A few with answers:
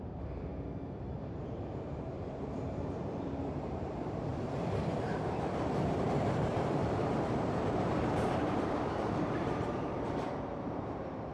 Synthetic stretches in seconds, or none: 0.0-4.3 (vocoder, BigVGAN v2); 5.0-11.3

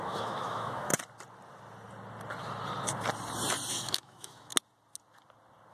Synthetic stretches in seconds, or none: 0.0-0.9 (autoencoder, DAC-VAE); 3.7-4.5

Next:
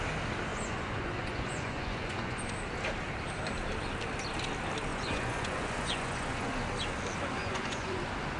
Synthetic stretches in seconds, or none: 0.5-2.5 (vocoder, Vocos); 4.9-6.5; 7.4-8.0